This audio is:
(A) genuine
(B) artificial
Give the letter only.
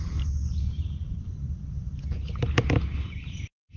A